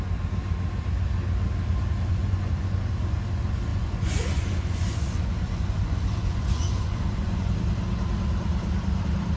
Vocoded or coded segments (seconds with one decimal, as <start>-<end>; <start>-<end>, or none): 2.1-2.8; 3.7-7.5